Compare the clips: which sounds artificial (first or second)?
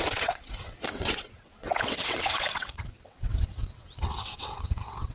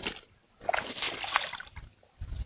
first